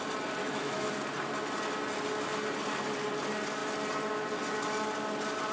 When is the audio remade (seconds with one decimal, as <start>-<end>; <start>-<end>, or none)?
0.4-0.9